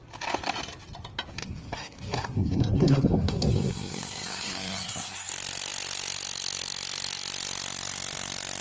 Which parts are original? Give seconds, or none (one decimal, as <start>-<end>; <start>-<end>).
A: 0.0-1.4; 5.3-8.6